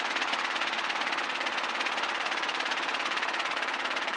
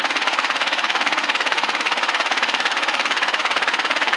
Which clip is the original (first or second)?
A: first